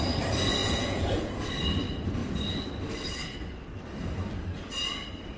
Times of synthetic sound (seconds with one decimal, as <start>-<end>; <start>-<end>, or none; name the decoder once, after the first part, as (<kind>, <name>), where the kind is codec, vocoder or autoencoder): 0.6-1.3 (vocoder, Vocos)